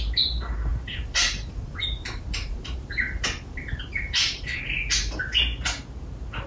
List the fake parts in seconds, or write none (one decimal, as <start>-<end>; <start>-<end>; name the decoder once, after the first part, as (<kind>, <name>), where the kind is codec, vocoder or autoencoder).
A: 0.7-4.6 (vocoder, BigVGAN v2)